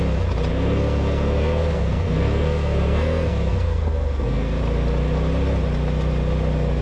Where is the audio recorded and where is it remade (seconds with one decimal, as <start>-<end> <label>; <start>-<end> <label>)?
0.0-0.5 recorded; 0.5-4.6 remade; 4.6-6.8 recorded